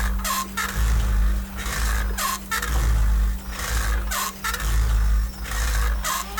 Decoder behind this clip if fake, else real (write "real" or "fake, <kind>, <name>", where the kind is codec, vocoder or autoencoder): real